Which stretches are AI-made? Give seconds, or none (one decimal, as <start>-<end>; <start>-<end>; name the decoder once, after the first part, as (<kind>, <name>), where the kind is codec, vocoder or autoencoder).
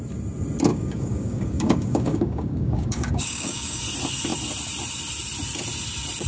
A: 0.7-3.8 (codec, DAC)